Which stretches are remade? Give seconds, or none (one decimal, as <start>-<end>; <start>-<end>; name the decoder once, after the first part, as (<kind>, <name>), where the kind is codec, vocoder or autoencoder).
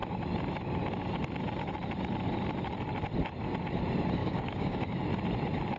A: 4.2-4.8 (codec, DAC)